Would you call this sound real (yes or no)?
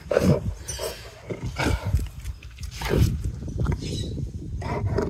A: no